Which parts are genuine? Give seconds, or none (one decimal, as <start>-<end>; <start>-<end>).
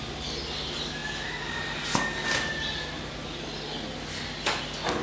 0.0-5.0